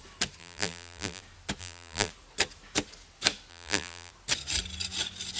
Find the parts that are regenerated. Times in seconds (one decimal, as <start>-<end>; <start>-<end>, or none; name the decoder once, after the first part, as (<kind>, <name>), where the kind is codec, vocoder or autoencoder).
0.4-1.2 (vocoder, BigVGAN v2); 1.6-2.1; 3.5-4.1